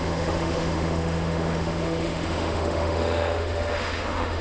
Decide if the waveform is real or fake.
fake